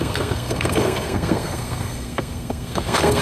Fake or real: fake